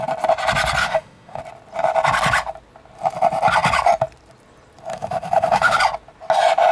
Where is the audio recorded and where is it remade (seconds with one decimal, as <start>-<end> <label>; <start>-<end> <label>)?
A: 0.0-0.8 recorded; 0.8-1.4 remade; 1.4-4.9 recorded; 4.9-5.8 remade; 5.8-6.7 recorded